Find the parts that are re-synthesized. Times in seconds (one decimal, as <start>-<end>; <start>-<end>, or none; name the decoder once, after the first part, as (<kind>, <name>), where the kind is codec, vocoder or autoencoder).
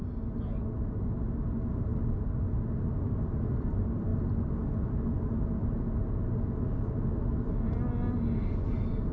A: none